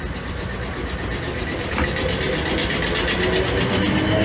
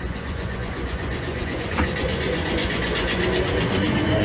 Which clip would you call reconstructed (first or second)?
second